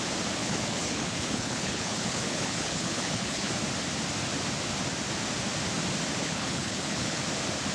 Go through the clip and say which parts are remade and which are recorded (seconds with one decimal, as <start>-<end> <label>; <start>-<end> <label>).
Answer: 0.0-0.4 recorded; 0.4-3.5 remade; 3.5-6.2 recorded; 6.2-7.2 remade; 7.2-7.7 recorded